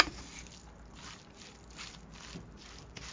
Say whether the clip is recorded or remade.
recorded